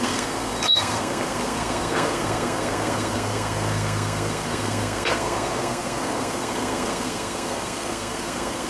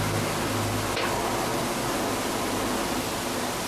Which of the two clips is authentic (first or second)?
second